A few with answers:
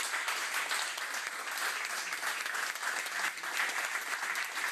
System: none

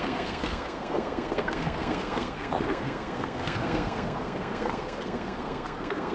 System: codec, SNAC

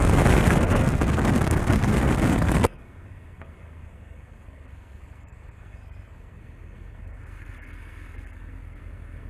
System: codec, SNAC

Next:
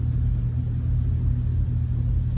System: none